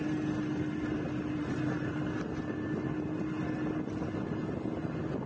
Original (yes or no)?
yes